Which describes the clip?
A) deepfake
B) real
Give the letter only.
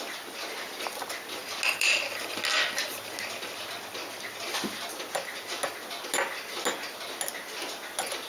B